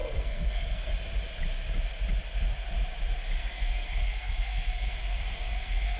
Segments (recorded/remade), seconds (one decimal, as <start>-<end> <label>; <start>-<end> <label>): 0.0-0.9 remade; 0.9-3.4 recorded; 3.4-6.0 remade